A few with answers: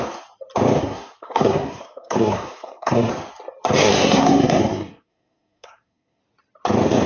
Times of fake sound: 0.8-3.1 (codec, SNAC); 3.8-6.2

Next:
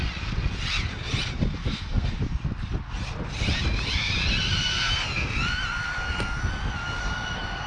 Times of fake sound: 1.6-2.1 (codec, SNAC)